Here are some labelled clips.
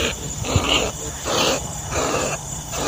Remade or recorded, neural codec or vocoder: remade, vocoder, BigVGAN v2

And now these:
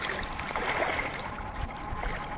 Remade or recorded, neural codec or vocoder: recorded